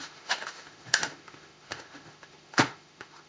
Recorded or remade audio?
remade